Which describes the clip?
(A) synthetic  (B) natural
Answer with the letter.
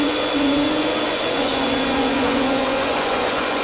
A